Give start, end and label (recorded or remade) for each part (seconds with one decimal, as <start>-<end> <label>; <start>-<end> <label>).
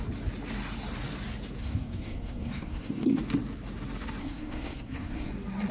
0.0-1.6 recorded; 1.6-3.2 remade; 3.2-4.2 recorded; 4.2-5.3 remade; 5.3-5.7 recorded